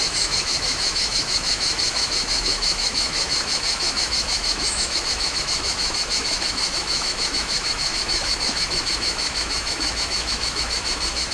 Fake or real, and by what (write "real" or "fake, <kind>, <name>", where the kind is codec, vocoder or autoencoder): fake, autoencoder, DAC-VAE